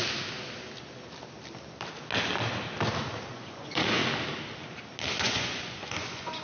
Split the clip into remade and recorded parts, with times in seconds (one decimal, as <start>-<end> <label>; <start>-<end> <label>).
0.0-3.3 recorded; 3.3-4.0 remade; 4.0-5.1 recorded; 5.1-6.4 remade